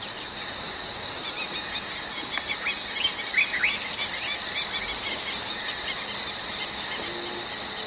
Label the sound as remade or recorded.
recorded